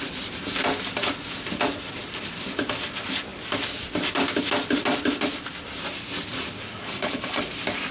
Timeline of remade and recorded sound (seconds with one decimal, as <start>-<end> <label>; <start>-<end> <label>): 0.0-6.8 recorded; 6.8-7.4 remade; 7.4-7.9 recorded